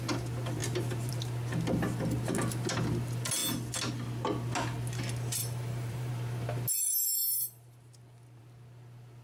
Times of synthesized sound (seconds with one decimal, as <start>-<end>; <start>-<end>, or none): 5.4-6.1